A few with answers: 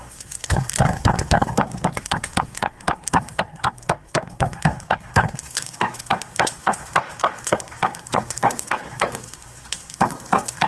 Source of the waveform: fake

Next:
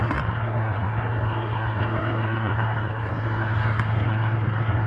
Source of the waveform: fake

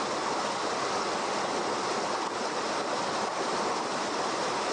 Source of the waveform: real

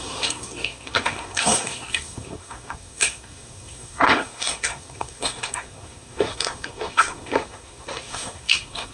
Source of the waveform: fake